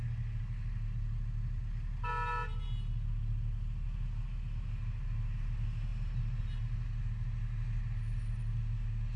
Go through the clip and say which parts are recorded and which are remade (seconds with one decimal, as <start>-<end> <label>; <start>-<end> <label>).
0.0-9.2 recorded